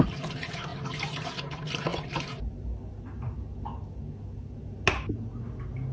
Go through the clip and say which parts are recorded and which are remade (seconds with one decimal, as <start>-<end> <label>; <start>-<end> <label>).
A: 0.0-5.9 recorded

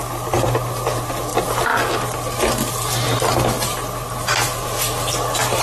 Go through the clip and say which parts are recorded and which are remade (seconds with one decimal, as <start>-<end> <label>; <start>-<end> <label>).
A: 0.0-5.6 recorded